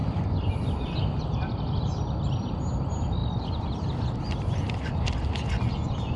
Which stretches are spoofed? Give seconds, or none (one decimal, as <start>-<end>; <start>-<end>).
none